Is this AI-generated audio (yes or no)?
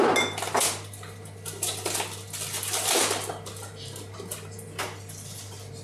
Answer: no